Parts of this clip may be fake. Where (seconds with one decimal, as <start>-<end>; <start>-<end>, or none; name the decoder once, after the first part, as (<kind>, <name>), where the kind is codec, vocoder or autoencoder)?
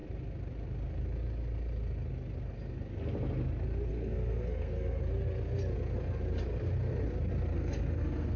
3.9-5.0 (codec, SNAC); 7.5-8.4